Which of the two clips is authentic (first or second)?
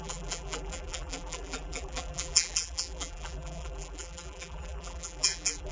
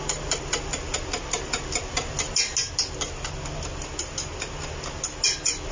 second